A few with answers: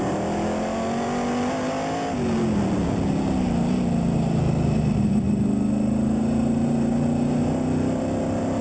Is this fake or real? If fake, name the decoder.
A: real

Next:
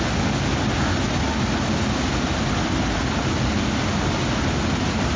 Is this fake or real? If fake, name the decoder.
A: real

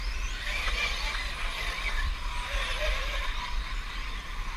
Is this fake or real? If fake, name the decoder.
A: real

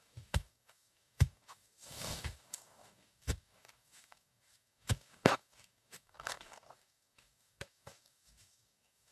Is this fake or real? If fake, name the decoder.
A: fake, codec, DAC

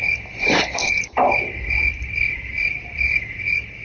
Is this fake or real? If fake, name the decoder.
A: real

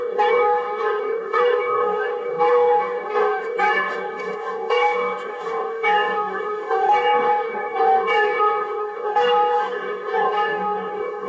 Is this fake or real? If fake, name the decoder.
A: fake, codec, DAC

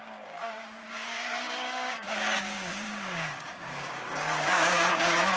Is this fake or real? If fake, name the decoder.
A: fake, codec, DAC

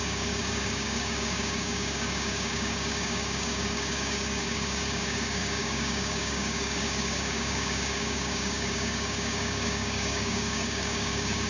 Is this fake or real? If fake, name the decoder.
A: fake, codec, DAC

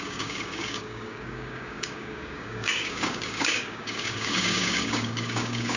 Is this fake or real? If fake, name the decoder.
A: fake, codec, DAC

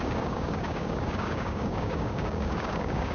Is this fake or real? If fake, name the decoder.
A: fake, codec, DAC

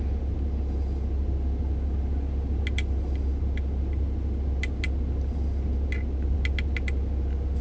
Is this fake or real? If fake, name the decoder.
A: real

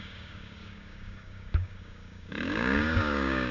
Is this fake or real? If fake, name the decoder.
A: fake, codec, DAC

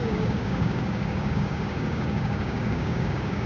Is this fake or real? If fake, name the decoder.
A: fake, codec, DAC